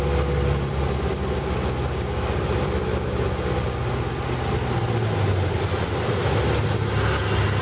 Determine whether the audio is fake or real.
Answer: real